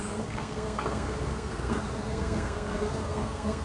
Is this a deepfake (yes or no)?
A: yes